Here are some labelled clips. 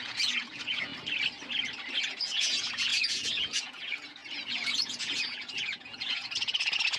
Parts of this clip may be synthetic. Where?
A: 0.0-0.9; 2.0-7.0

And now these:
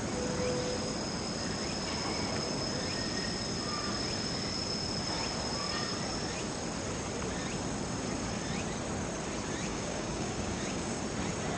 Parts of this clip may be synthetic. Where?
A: 9.7-11.0

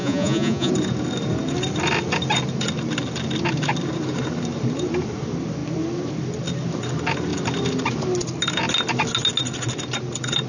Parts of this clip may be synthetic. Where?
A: 0.0-0.7

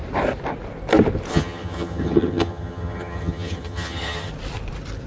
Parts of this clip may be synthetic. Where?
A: 1.3-4.3

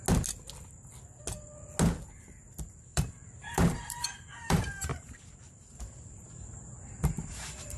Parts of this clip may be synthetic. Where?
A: 2.9-7.8

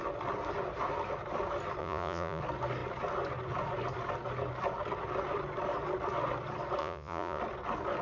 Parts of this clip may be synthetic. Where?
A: 1.8-2.4; 6.8-7.4